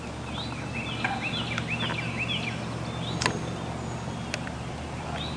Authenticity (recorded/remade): recorded